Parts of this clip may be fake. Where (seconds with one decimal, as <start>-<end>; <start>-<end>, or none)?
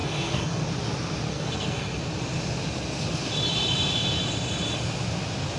0.0-0.6; 1.3-2.0